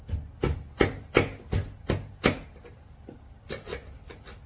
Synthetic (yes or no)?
no